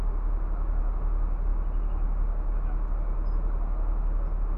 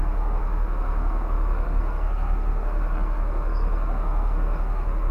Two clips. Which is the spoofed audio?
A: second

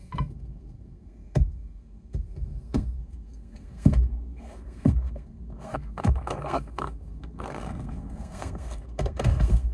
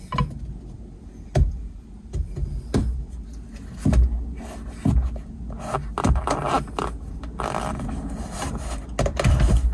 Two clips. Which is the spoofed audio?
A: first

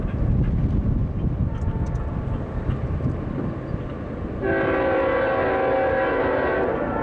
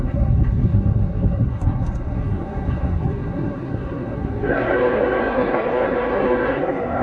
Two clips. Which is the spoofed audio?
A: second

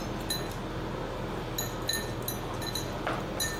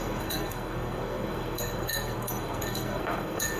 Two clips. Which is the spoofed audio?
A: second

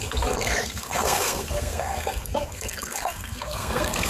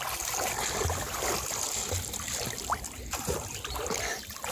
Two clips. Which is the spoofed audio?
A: first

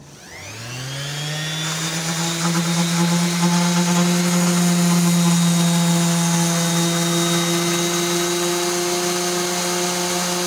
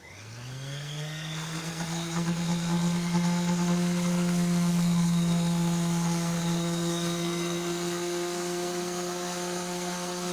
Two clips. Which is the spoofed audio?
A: second